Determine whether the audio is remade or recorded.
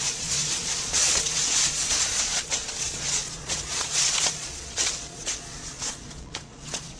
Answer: remade